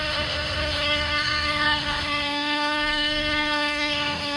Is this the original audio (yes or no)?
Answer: no